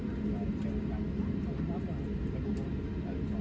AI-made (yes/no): no